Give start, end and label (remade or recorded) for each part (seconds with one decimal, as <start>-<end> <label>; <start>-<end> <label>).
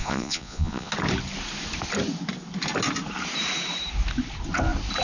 0.0-0.9 remade; 0.9-5.0 recorded